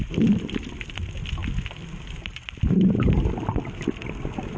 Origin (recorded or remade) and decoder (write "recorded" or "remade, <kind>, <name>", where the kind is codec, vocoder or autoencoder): remade, vocoder, BigVGAN v2